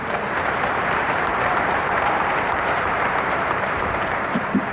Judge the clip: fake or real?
fake